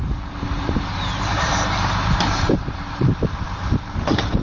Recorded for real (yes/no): no